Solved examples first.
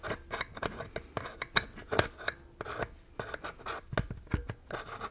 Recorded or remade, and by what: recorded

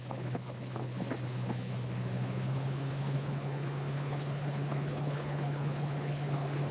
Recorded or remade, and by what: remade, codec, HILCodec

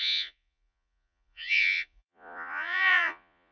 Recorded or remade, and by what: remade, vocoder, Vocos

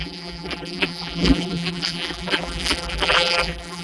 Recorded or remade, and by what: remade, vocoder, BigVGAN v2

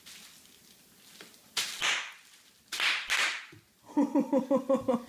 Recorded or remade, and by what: recorded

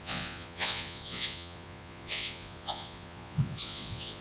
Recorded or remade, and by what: remade, vocoder, Vocos